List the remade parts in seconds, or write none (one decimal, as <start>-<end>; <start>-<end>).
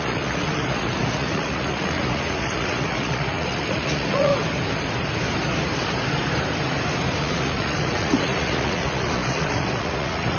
0.0-4.3; 7.2-10.4